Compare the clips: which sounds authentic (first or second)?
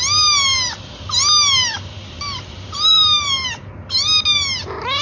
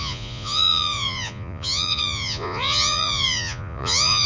first